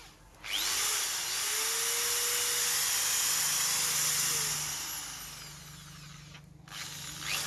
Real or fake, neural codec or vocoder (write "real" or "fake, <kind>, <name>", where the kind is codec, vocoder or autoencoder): real